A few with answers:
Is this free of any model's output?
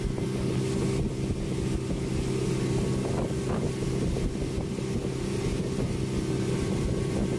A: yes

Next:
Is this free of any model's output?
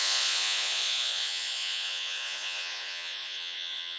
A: no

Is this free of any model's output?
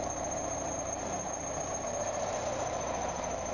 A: no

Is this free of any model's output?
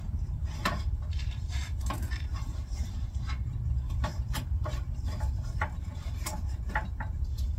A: no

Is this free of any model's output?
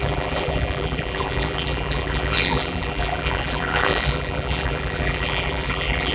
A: no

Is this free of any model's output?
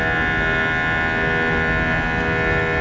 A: yes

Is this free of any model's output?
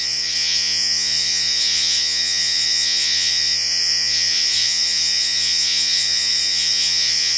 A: no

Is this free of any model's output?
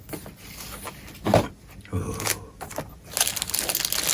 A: yes